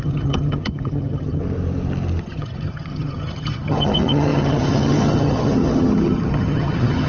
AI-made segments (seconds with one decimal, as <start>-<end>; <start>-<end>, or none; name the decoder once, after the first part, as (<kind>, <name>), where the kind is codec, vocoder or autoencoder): 0.0-1.4 (vocoder, HiFi-GAN); 2.2-7.1